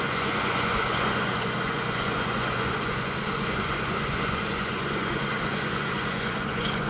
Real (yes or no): no